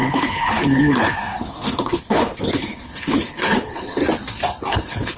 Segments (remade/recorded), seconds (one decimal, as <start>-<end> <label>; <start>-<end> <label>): 0.0-4.0 remade; 4.0-4.7 recorded; 4.7-5.2 remade